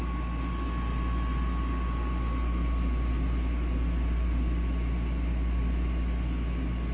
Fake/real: real